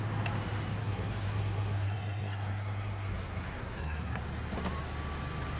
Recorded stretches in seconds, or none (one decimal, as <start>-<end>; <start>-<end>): 0.0-0.8; 4.2-5.6